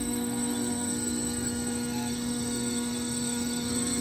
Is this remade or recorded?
remade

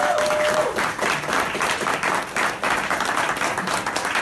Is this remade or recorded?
recorded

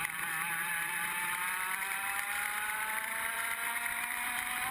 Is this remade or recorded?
remade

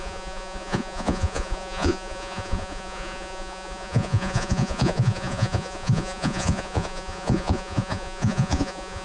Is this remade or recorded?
remade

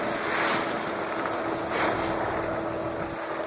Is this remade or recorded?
recorded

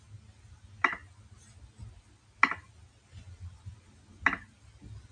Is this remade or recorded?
recorded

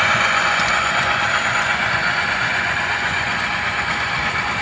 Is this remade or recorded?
remade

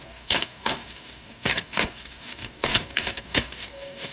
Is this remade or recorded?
remade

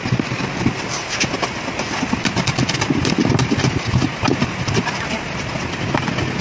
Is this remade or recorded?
recorded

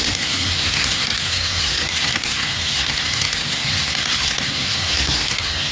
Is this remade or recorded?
remade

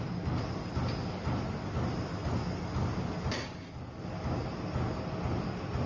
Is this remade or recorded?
recorded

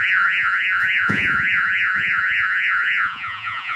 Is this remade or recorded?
remade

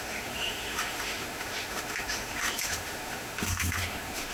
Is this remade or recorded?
remade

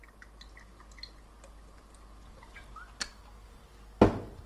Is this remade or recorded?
recorded